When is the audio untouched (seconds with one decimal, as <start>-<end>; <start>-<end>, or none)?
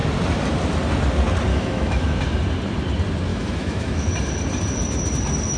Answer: 0.0-1.5; 2.2-3.3; 4.1-5.6